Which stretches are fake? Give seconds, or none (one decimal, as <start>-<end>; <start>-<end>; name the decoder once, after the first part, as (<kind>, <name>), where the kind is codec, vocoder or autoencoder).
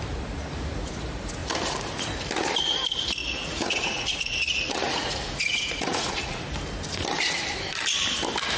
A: 3.2-6.4 (vocoder, Vocos)